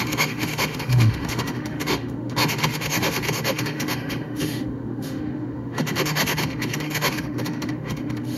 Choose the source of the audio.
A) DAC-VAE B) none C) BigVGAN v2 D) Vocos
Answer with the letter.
A